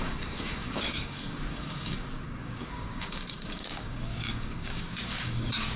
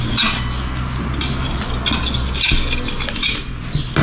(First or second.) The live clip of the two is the second